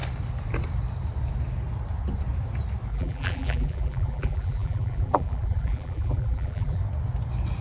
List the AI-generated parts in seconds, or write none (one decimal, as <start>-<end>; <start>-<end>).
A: 2.9-6.8

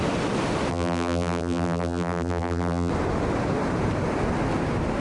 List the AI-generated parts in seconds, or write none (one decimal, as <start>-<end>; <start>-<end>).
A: 0.7-2.9

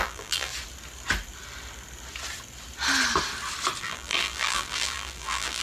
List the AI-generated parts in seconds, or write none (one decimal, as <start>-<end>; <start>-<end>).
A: 0.0-0.5; 3.8-5.6

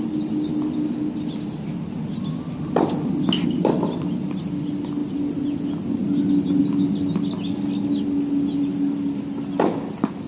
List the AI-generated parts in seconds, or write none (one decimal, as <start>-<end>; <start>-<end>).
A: none

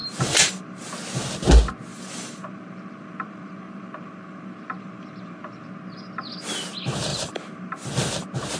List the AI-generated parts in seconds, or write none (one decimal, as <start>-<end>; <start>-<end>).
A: 0.0-0.9; 1.9-5.7; 7.1-7.9

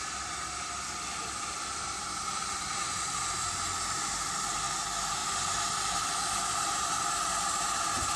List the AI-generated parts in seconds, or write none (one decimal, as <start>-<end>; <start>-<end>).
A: none

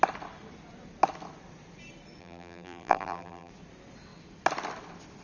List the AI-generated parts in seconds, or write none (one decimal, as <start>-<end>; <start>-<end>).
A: 2.2-3.5

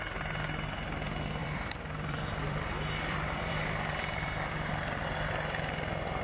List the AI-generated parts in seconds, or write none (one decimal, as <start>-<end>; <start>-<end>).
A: 1.4-4.7